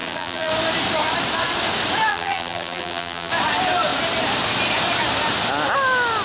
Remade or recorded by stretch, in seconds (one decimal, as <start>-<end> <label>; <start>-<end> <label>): 0.0-0.5 remade; 0.5-2.1 recorded; 2.1-3.3 remade; 3.3-6.2 recorded